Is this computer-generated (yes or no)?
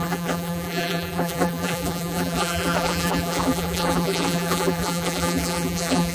yes